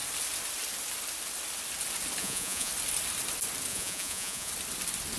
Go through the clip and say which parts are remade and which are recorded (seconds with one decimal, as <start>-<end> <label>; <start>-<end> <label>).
0.0-2.2 recorded; 2.2-2.7 remade; 2.7-3.7 recorded; 3.7-4.5 remade; 4.5-5.2 recorded